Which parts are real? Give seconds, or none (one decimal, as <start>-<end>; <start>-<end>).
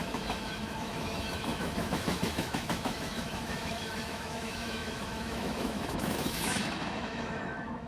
none